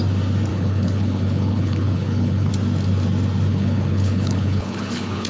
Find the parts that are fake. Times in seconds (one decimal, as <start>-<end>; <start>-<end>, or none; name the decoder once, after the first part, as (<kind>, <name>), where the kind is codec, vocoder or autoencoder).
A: 0.5-2.5 (codec, HILCodec); 3.5-5.3